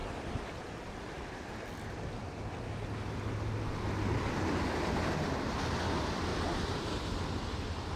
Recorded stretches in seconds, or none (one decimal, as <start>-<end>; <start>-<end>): 2.4-6.3; 7.2-8.0